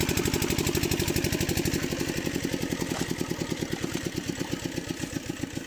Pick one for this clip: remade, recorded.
recorded